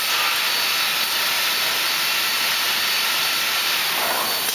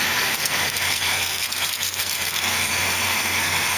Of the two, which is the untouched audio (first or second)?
first